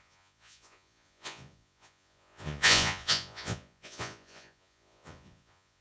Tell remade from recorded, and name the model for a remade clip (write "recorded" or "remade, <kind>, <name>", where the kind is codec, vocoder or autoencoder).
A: remade, vocoder, Vocos